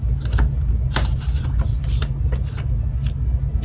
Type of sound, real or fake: real